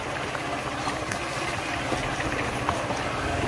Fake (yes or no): no